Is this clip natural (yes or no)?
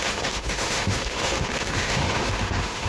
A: no